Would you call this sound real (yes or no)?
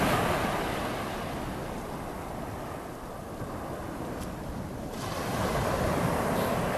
yes